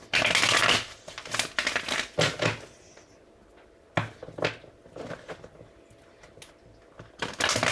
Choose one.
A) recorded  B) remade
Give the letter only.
A